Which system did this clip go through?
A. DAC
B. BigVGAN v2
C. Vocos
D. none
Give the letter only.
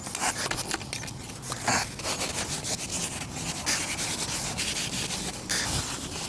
D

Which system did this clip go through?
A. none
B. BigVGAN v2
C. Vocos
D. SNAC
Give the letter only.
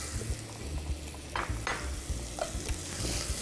A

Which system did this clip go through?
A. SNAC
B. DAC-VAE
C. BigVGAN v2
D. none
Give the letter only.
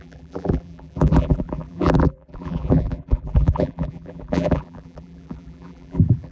C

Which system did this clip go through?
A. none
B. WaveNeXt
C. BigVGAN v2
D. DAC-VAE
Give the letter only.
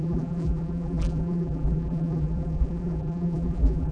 C